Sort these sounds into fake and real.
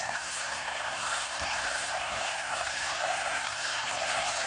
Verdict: fake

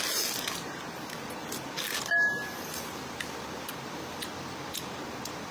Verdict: real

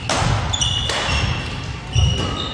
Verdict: real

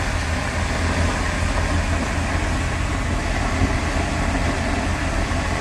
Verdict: real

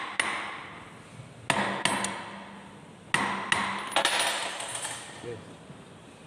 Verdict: real